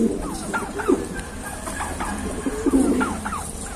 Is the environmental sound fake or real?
real